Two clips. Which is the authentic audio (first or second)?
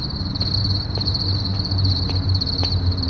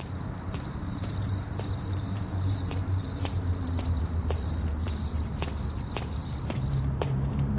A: first